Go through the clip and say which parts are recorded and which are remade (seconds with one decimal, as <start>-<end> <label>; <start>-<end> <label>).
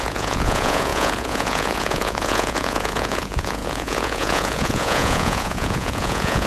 0.0-6.5 remade